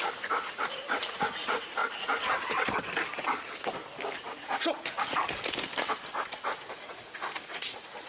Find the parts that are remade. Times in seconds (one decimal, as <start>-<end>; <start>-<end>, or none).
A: 0.0-1.8; 6.7-8.1